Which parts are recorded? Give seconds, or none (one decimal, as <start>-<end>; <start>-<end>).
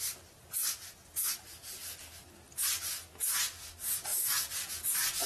0.0-5.3